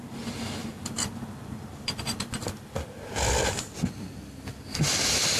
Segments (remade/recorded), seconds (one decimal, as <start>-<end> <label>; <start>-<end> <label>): 0.0-0.6 recorded; 0.6-3.3 remade; 3.3-5.4 recorded